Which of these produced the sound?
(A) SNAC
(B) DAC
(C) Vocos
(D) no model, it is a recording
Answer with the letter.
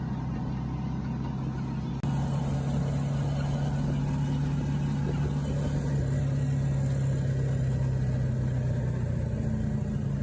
D